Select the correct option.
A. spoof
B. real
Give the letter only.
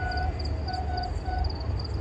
B